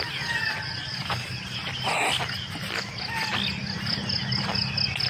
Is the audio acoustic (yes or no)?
yes